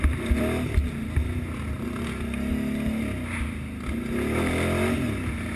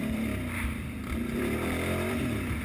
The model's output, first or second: second